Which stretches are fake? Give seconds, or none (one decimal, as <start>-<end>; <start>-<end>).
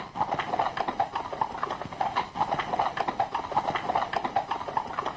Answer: none